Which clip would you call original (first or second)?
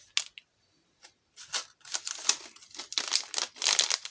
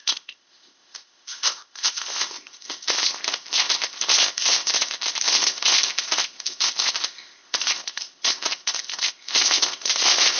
first